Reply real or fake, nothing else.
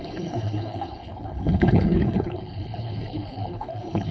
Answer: fake